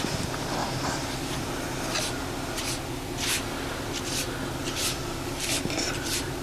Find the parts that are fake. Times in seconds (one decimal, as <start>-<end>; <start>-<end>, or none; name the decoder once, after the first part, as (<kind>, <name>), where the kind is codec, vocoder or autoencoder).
4.6-6.4 (vocoder, BigVGAN v2)